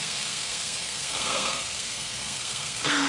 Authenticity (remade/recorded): remade